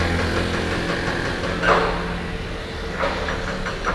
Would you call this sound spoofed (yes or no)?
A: no